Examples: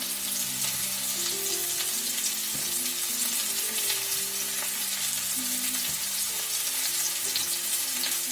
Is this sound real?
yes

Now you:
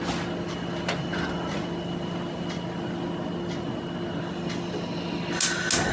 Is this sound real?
yes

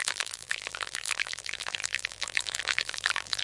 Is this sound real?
no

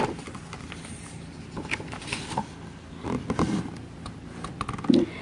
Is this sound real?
yes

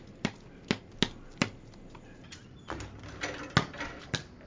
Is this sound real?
yes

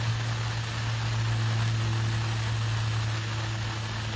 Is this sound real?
yes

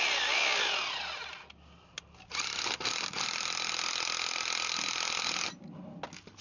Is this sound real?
yes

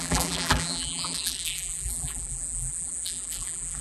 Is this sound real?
no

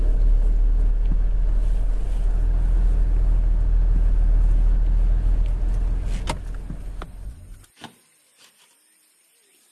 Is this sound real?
yes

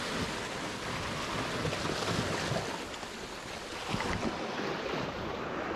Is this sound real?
yes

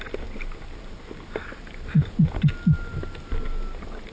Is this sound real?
yes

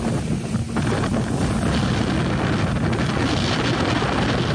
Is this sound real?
yes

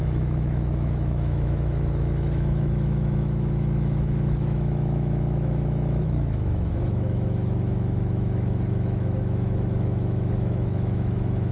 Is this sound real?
no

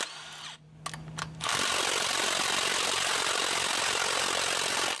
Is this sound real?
yes